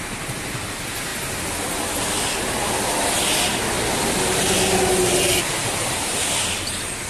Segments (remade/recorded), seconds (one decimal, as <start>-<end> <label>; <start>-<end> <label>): 0.0-7.1 recorded